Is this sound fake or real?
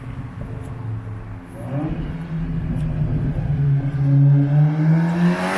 real